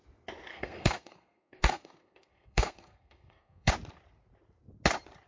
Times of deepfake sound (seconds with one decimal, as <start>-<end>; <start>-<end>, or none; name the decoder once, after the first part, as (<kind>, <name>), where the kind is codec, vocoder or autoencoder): 0.5-3.7 (codec, SNAC)